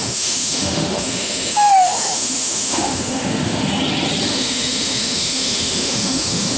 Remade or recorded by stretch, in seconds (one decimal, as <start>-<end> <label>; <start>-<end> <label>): 0.0-3.7 remade; 3.7-4.3 recorded; 4.3-6.6 remade